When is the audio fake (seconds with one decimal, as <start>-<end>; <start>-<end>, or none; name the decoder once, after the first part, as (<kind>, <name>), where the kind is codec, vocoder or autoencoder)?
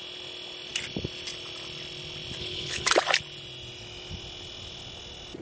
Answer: 2.4-2.9 (codec, HILCodec)